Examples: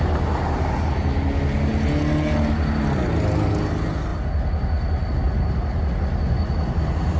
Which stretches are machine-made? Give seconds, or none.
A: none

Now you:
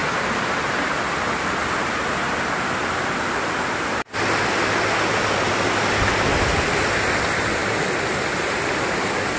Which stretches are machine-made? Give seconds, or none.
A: none